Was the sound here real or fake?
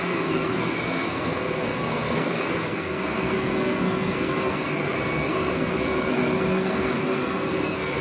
fake